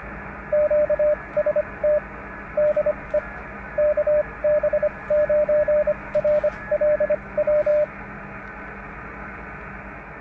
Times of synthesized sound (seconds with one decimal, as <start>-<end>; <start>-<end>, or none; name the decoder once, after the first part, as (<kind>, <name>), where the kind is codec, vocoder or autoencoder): none